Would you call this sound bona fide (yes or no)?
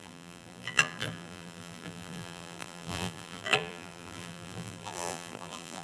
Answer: no